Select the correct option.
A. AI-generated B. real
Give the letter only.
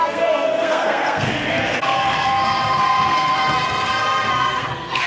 A